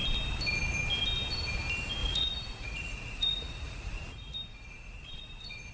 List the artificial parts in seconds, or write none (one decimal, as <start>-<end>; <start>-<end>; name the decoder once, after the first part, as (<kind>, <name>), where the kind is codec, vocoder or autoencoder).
2.0-5.7 (vocoder, Vocos)